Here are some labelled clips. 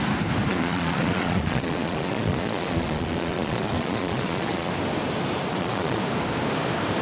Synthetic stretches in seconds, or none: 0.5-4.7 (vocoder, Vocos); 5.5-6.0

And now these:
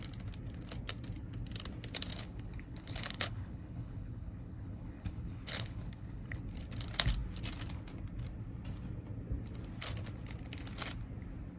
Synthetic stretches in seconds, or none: 2.1-6.4 (codec, HILCodec)

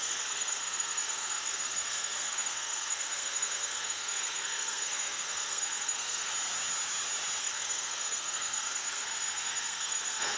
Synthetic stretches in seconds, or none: 0.0-6.3 (codec, SNAC); 7.4-10.4

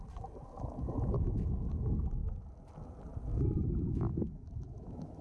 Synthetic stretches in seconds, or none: 3.3-5.2 (autoencoder, DAC-VAE)